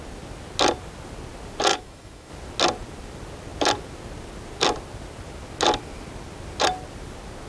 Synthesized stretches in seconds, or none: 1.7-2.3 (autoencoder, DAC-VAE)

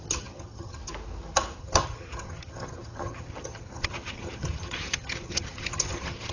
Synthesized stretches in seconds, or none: 0.0-0.8 (vocoder, HiFi-GAN); 1.6-6.3

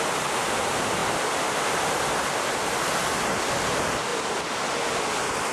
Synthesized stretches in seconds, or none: none

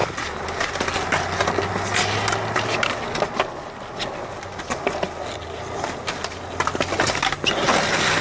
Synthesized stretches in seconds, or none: 0.0-0.8 (vocoder, BigVGAN v2)

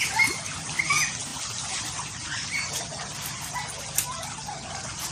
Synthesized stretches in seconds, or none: none

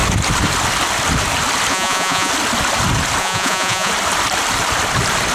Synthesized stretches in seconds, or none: 1.7-2.3 (vocoder, Vocos); 3.2-3.9

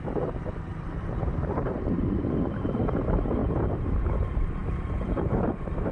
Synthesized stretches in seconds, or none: 0.0-3.4 (vocoder, BigVGAN v2); 4.0-5.9

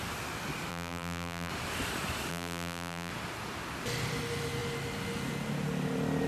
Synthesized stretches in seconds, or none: 0.7-1.5 (vocoder, BigVGAN v2); 2.3-3.1